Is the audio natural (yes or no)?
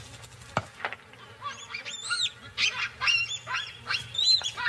yes